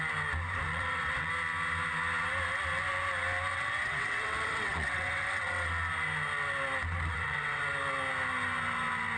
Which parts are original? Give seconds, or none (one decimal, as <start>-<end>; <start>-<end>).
0.0-0.7; 1.3-3.5; 5.7-7.1; 7.6-9.2